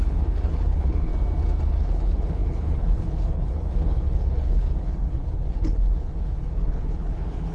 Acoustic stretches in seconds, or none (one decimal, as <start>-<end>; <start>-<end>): 1.1-1.7

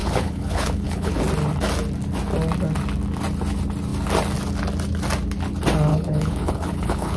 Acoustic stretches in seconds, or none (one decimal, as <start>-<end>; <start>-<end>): 1.2-5.9